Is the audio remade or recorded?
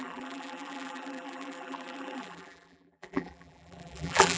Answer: remade